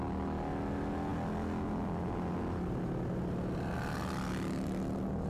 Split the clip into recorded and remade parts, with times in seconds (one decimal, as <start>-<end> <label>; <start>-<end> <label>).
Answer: 0.0-5.3 recorded